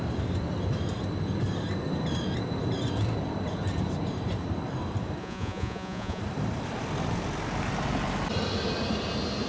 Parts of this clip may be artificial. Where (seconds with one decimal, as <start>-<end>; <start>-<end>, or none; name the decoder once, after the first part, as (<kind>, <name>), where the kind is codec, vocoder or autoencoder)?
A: 5.2-6.2 (vocoder, Vocos)